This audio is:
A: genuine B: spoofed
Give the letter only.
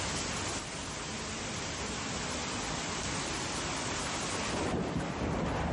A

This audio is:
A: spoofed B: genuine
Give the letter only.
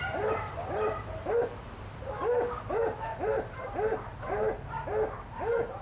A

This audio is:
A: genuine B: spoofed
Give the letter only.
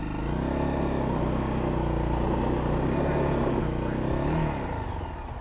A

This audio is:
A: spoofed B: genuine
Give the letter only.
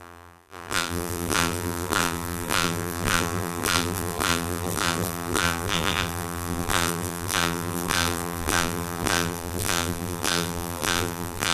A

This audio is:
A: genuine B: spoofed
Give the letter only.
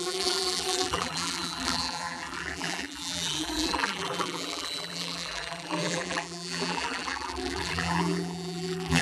B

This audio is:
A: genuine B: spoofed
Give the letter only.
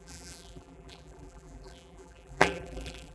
B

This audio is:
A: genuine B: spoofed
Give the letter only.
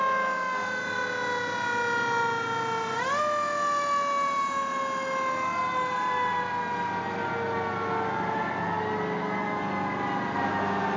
A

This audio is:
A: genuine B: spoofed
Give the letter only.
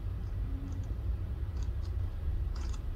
B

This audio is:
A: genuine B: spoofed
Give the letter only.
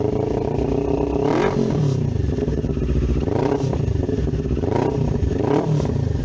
B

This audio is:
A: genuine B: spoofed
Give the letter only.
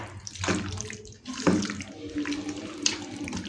A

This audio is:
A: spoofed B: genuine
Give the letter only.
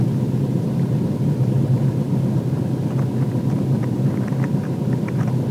B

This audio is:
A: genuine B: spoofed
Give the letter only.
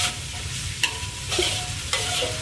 B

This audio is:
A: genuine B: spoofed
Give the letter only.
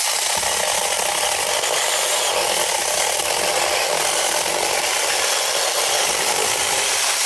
A